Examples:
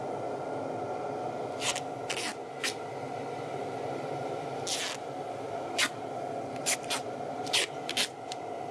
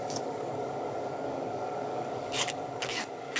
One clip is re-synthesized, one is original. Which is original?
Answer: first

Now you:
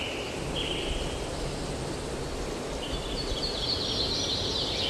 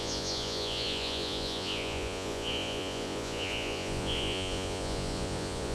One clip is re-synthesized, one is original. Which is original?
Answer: first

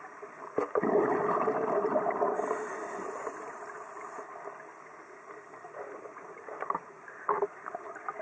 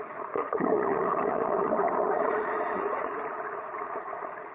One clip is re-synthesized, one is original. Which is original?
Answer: first